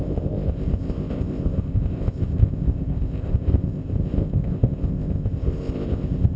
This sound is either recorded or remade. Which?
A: remade